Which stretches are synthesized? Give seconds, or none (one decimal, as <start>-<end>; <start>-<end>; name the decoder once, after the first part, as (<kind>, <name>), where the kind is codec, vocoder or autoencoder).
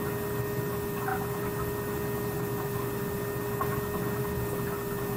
none